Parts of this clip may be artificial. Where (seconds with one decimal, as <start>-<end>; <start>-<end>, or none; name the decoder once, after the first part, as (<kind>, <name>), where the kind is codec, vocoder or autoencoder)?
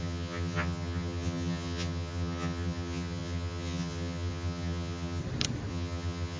0.0-5.2 (vocoder, HiFi-GAN); 5.7-6.4